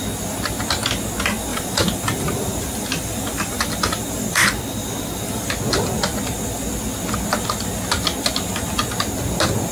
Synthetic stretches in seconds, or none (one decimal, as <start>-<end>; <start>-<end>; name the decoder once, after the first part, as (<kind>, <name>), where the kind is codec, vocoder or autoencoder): 1.5-5.5 (vocoder, BigVGAN v2)